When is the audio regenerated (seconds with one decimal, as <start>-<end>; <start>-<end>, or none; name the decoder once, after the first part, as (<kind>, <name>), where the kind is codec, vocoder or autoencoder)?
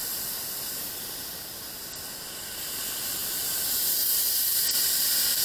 none